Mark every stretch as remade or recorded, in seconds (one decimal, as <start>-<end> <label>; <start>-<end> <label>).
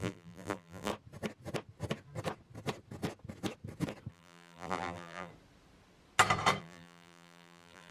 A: 0.0-0.9 remade; 0.9-4.1 recorded; 4.1-5.3 remade; 5.3-6.6 recorded; 6.6-7.9 remade